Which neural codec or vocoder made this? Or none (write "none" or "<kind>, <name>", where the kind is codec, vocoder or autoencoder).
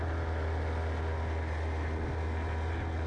none